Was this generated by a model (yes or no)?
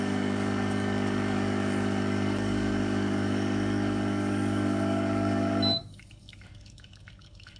yes